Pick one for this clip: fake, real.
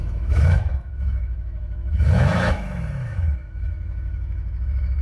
fake